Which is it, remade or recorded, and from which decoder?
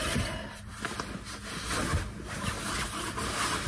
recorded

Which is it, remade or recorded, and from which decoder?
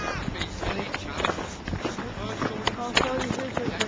recorded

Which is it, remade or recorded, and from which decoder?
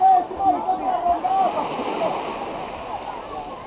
recorded